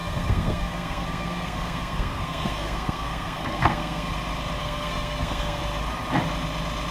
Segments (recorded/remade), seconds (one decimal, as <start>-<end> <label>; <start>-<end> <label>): 0.0-4.1 remade; 4.1-4.6 recorded; 4.6-5.6 remade; 5.6-6.9 recorded